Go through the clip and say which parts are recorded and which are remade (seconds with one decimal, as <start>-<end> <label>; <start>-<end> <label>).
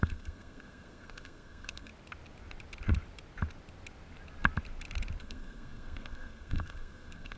0.0-1.9 remade; 1.9-5.2 recorded; 5.2-7.4 remade